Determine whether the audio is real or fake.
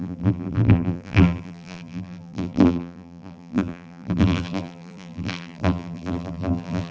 fake